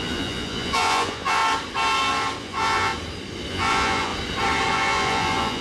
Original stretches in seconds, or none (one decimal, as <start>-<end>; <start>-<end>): 1.4-2.4; 2.9-3.5; 4.1-4.7